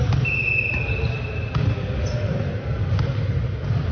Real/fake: real